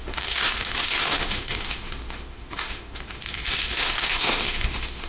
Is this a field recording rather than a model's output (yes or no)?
no